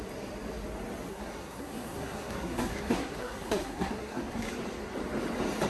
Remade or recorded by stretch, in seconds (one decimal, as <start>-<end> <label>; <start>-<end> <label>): 0.0-1.1 recorded; 1.1-4.5 remade; 4.5-5.7 recorded